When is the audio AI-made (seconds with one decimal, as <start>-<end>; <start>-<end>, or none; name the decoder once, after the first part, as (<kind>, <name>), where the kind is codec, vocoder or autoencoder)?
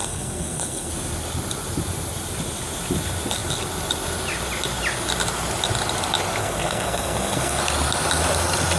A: 0.0-0.9 (codec, SNAC); 6.4-7.6